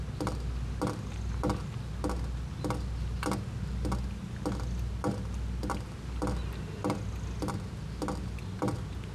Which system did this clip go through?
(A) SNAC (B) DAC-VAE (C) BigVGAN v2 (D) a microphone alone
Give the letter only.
D